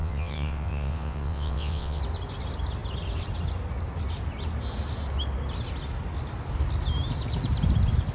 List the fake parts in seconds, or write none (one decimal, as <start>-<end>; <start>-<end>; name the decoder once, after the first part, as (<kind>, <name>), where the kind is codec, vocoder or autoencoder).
0.0-2.0 (vocoder, WaveNeXt)